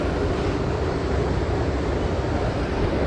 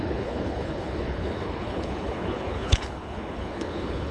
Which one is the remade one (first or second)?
second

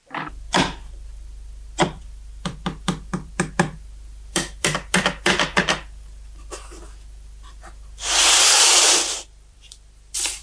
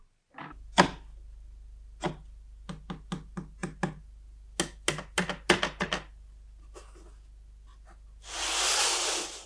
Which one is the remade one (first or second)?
first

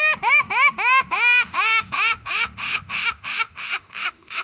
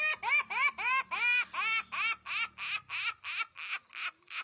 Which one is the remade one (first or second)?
first